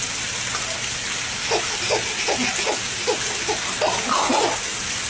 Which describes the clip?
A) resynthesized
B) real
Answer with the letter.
B